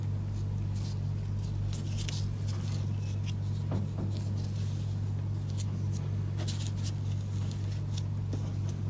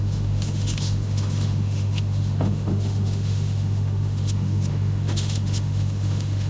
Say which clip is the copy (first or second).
second